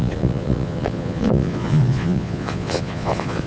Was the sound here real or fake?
fake